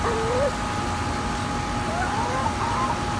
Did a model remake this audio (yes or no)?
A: no